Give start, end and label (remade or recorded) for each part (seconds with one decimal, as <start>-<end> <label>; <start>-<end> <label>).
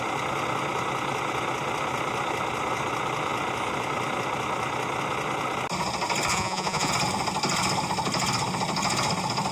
0.0-6.3 recorded; 6.3-6.9 remade; 6.9-9.5 recorded